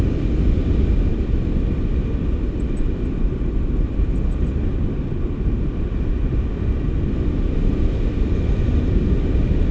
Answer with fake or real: real